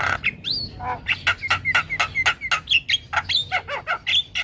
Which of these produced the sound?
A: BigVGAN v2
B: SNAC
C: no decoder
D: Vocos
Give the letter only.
C